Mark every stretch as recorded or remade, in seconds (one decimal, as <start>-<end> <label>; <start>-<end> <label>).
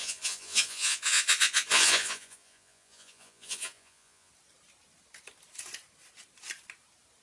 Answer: 0.0-4.3 remade; 4.3-7.2 recorded